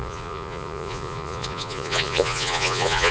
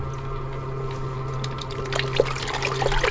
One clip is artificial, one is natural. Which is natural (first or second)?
second